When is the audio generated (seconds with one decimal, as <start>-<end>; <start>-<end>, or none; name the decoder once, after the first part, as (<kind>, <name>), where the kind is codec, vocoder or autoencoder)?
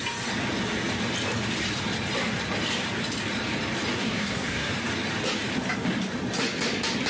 4.0-4.7 (codec, SNAC)